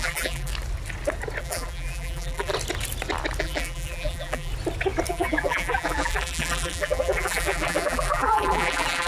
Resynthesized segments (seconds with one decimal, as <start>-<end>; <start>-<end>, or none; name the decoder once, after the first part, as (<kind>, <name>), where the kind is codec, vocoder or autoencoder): 0.0-0.5 (vocoder, BigVGAN v2); 1.4-2.5; 3.4-4.5; 5.1-9.1

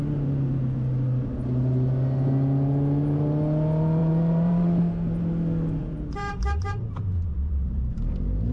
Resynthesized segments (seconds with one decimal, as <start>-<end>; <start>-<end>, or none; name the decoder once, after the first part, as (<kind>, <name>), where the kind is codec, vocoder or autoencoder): 4.0-4.8 (vocoder, BigVGAN v2); 5.8-8.5

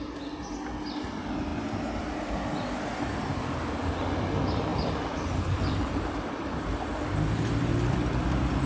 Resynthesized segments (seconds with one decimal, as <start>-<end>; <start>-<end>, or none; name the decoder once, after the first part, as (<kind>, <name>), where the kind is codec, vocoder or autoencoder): 4.7-8.1 (vocoder, BigVGAN v2)

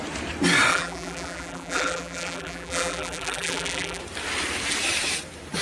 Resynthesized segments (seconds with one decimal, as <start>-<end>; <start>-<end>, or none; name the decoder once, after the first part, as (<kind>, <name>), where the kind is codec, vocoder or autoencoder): 0.7-4.0 (vocoder, BigVGAN v2)

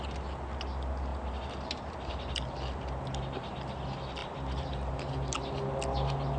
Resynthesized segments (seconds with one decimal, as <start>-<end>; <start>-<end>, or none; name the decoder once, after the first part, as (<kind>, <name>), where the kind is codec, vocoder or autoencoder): none

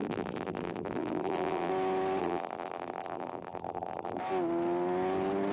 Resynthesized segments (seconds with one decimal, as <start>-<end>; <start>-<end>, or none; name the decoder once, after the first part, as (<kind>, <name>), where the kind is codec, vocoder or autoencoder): 0.0-1.7 (vocoder, BigVGAN v2); 2.2-4.2

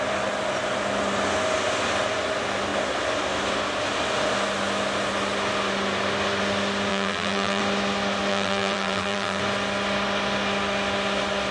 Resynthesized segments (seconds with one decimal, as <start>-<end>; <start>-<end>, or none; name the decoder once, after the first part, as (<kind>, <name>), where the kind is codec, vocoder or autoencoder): 6.9-7.6 (vocoder, BigVGAN v2); 8.3-9.4

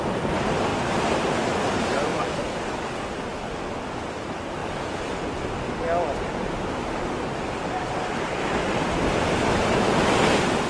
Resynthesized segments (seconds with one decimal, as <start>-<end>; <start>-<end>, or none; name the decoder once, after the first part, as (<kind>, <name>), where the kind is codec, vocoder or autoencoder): none